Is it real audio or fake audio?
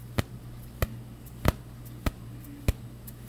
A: real